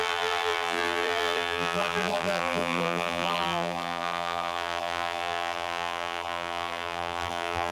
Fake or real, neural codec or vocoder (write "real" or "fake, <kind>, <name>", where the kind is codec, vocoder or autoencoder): fake, vocoder, BigVGAN v2